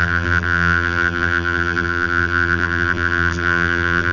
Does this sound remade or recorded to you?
remade